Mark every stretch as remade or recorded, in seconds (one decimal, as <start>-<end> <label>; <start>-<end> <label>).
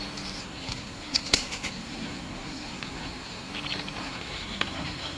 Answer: 0.0-0.4 recorded; 0.4-3.5 remade; 3.5-4.0 recorded; 4.0-5.2 remade